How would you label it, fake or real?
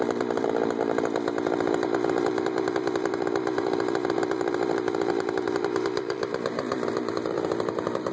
fake